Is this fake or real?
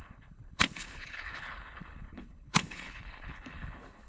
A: fake